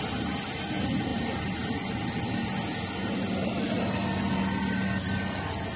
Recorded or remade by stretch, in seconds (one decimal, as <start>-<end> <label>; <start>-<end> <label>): 0.0-5.8 recorded